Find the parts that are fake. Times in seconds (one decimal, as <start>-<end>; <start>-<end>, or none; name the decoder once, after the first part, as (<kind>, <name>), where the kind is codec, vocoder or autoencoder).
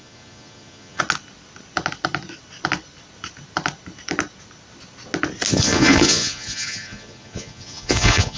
0.0-1.0 (vocoder, Vocos); 5.5-8.4